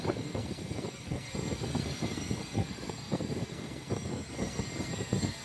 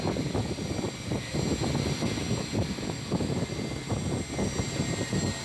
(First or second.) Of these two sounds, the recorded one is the second